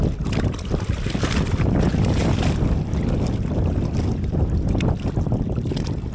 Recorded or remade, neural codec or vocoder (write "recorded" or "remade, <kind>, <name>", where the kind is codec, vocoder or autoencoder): recorded